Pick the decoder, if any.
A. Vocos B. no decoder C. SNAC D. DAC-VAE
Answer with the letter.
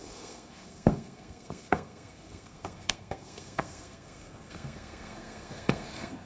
C